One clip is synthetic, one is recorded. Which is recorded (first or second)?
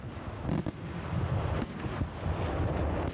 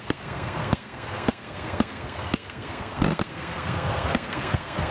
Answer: first